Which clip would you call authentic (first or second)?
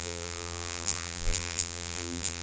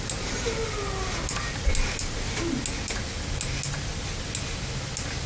second